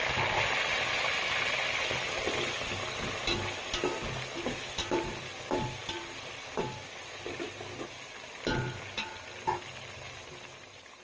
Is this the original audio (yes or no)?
yes